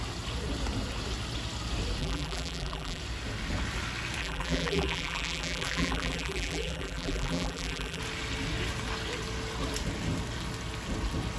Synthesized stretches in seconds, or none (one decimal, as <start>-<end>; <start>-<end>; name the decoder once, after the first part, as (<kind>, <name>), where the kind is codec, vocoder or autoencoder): 2.0-3.0 (vocoder, BigVGAN v2); 4.2-8.0